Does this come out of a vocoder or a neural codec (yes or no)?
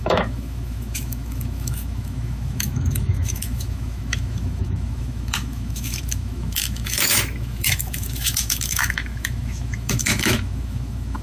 yes